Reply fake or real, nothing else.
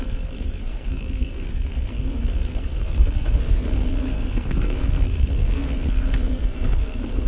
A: fake